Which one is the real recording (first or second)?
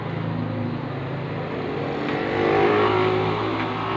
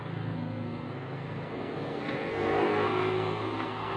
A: first